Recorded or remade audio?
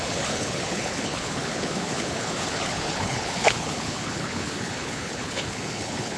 remade